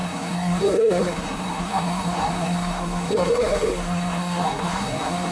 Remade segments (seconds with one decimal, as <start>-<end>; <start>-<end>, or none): 0.0-5.3